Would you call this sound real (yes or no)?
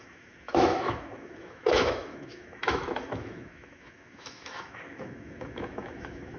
no